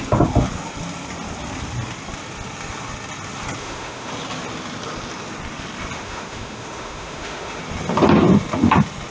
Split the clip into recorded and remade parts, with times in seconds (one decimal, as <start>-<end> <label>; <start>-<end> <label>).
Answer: 0.0-3.6 recorded; 3.6-4.1 remade; 4.1-6.0 recorded; 6.0-7.6 remade; 7.6-9.1 recorded